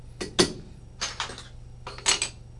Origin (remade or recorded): recorded